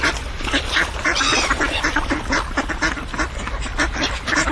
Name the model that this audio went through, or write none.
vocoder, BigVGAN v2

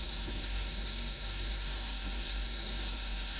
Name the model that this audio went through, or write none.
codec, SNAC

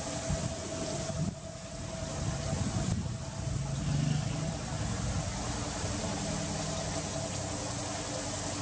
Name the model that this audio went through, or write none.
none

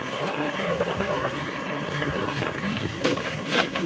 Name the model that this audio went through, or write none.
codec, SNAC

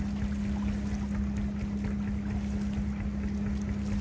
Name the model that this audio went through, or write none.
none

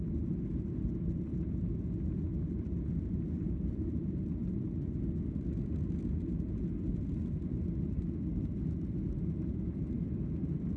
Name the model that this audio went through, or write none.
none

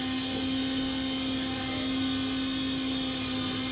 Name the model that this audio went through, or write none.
none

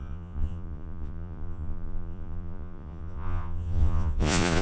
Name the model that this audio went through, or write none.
vocoder, Vocos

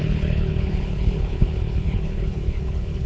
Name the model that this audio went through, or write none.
codec, HILCodec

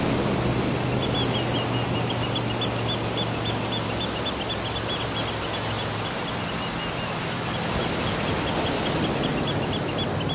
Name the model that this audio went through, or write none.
none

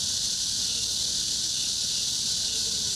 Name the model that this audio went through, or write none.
none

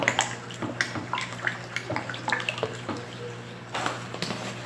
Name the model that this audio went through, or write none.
none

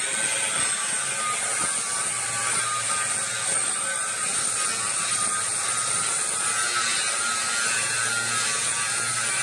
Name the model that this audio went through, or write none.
none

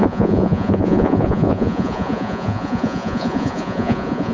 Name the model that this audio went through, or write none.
vocoder, Vocos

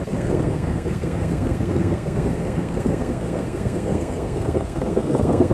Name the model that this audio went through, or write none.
codec, SNAC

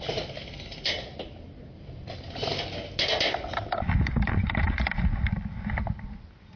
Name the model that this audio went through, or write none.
none